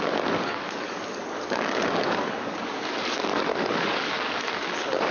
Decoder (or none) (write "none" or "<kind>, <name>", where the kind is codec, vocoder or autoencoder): codec, DAC